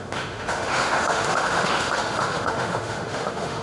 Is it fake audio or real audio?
fake